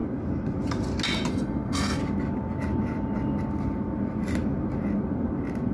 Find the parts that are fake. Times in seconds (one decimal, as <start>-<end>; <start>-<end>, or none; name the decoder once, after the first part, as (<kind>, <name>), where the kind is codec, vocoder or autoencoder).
1.3-2.0 (codec, SNAC)